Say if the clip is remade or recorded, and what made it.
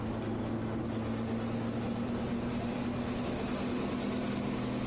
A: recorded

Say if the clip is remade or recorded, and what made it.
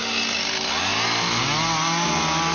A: recorded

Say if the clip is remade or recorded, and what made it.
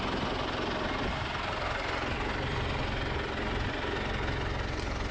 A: recorded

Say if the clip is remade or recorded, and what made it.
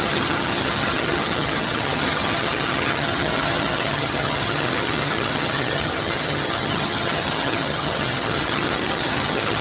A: remade, vocoder, HiFi-GAN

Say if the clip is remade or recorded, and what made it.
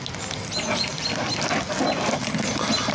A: recorded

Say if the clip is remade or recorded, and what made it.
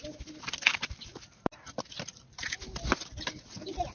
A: recorded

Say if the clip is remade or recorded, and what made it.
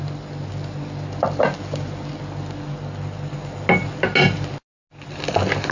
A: recorded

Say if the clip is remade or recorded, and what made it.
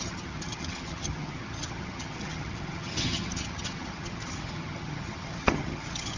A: remade, vocoder, HiFi-GAN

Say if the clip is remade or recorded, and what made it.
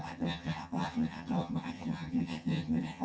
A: remade, vocoder, HiFi-GAN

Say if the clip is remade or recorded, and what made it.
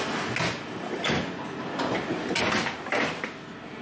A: recorded